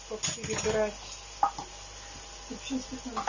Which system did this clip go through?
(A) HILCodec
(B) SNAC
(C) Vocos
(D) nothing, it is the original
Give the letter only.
D